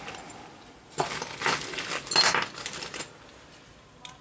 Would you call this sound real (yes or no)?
yes